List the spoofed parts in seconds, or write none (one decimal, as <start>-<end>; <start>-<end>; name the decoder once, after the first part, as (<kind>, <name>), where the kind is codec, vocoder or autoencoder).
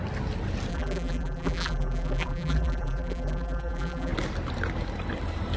0.7-4.1 (vocoder, BigVGAN v2)